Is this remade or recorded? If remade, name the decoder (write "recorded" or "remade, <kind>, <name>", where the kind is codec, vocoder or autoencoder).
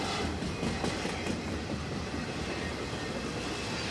recorded